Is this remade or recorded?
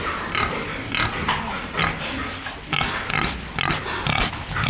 recorded